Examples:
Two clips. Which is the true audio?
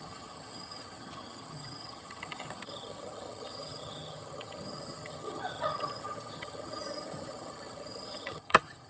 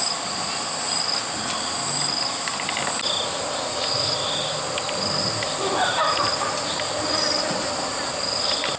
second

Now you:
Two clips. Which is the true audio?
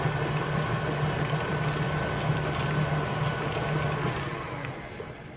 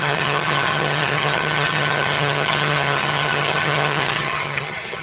first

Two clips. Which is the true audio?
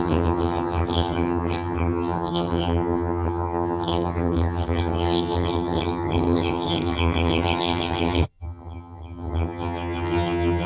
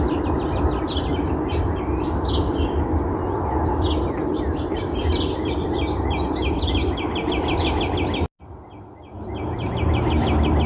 second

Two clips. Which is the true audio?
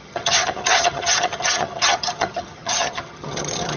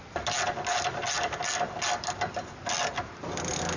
second